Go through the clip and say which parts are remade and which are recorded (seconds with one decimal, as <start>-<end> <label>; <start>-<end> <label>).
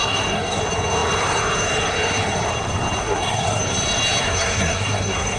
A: 0.0-0.6 remade; 0.6-3.0 recorded; 3.0-3.6 remade; 3.6-4.2 recorded; 4.2-5.4 remade